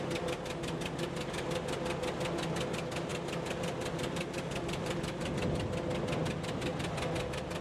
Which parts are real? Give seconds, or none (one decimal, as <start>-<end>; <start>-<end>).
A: 0.0-3.1; 5.3-7.6